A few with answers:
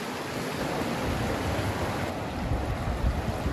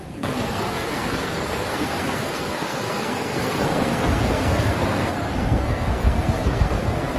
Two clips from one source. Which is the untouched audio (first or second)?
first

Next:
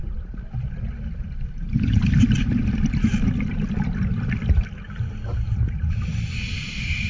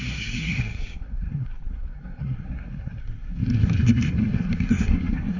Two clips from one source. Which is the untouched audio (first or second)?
first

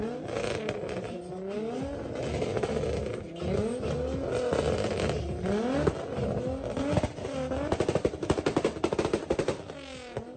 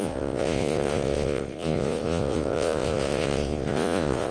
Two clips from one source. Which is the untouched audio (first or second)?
first